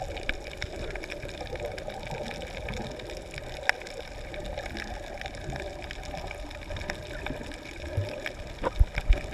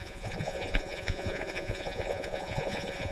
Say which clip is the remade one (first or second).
second